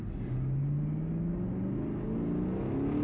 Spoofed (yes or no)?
no